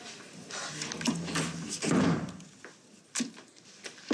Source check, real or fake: real